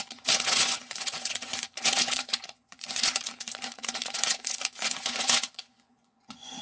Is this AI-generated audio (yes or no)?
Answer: yes